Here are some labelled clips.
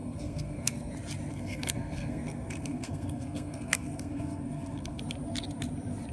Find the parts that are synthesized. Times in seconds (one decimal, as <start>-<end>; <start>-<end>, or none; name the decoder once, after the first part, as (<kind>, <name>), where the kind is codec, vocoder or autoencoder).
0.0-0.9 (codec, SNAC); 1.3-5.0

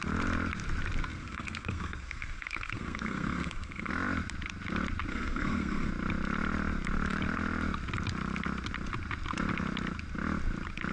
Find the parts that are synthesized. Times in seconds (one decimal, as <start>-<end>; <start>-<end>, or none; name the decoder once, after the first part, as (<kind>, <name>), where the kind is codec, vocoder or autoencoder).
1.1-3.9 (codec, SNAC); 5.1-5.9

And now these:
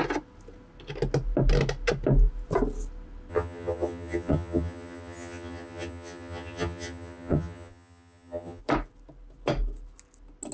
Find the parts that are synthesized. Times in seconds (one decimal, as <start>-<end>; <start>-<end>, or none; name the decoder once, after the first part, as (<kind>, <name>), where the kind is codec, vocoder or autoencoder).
3.3-8.6 (vocoder, HiFi-GAN)

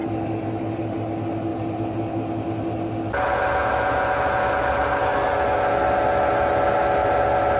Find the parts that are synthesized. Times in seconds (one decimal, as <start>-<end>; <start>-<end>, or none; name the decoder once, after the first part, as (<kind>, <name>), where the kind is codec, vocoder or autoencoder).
none